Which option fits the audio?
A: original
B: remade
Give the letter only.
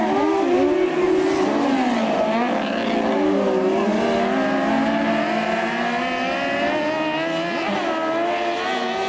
A